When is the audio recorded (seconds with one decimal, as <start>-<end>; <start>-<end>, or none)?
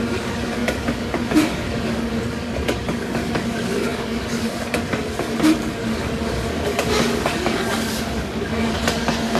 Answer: none